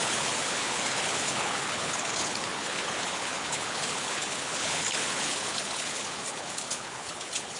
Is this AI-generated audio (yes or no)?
yes